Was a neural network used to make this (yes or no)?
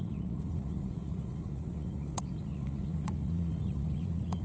yes